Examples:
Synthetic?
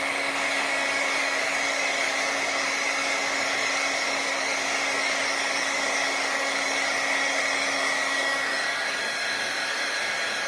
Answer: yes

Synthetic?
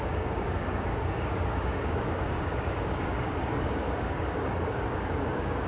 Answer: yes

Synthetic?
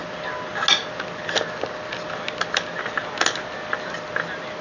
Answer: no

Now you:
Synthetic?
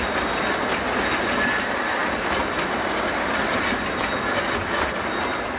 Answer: no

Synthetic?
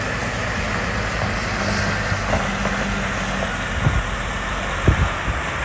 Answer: no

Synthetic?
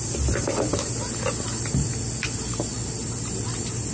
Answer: no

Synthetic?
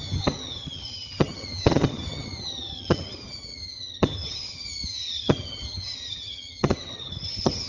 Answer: yes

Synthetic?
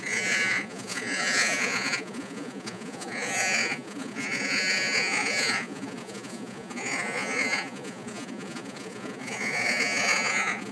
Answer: yes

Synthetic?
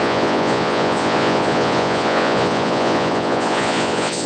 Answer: yes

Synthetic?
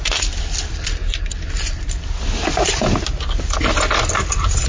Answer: yes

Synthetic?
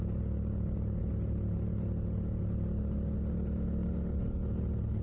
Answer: no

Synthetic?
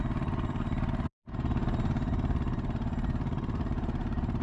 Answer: yes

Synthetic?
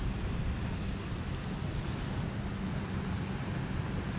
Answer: no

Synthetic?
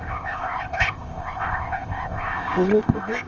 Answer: yes